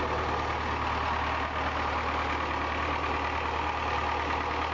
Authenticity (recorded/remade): recorded